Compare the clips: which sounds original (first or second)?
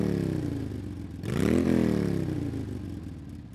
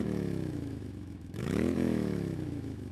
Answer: first